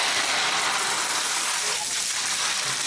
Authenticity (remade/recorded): recorded